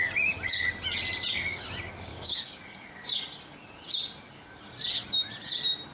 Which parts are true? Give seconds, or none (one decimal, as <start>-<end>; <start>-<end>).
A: 0.0-2.1; 2.6-5.9